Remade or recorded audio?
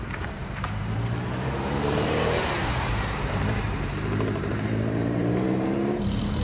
remade